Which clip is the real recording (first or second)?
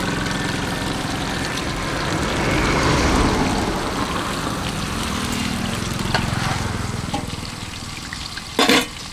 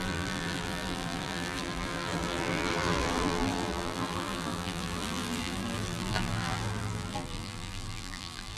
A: first